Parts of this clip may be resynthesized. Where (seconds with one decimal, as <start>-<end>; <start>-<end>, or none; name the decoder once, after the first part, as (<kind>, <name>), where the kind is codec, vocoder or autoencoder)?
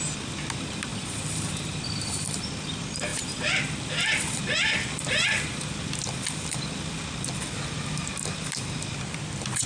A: 0.9-2.4 (vocoder, BigVGAN v2); 3.1-5.7